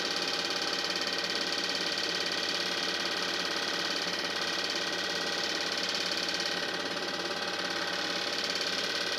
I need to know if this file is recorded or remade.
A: recorded